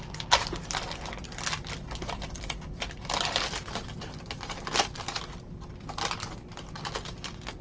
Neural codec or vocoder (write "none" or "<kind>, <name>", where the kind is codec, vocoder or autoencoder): none